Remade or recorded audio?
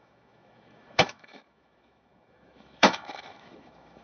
remade